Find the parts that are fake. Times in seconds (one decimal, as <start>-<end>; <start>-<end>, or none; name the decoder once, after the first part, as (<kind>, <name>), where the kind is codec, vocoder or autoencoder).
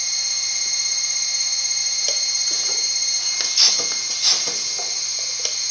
none